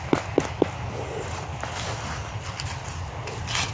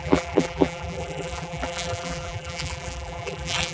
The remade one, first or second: second